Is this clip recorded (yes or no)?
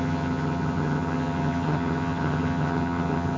no